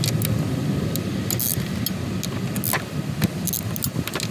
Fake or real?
real